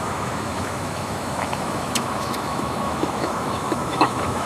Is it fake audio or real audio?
fake